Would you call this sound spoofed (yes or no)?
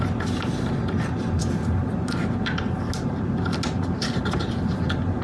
no